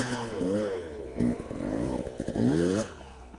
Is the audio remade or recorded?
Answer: remade